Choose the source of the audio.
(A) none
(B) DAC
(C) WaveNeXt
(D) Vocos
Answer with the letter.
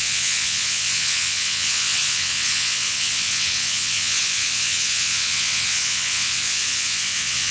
C